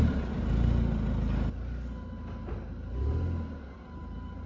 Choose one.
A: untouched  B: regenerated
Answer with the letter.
A